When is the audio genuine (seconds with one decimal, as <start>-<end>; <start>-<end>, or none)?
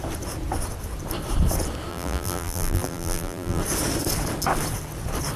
0.0-1.9; 3.6-5.4